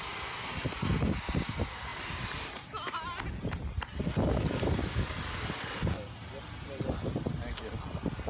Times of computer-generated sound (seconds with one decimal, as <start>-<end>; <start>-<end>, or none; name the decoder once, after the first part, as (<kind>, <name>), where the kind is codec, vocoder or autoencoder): none